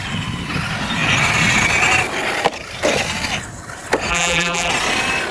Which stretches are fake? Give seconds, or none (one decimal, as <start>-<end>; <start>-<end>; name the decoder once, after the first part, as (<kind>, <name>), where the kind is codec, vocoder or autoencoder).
4.1-4.7 (vocoder, BigVGAN v2)